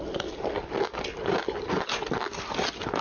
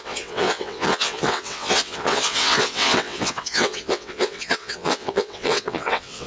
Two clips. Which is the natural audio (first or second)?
first